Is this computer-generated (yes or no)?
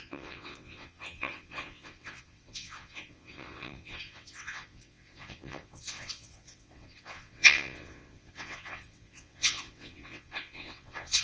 yes